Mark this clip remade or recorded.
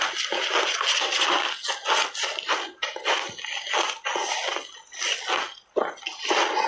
recorded